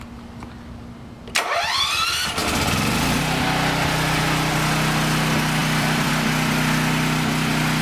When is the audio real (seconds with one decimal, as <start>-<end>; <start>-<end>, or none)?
0.0-5.6; 6.1-7.8